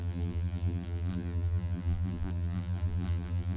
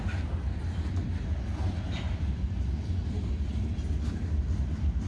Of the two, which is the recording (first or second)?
second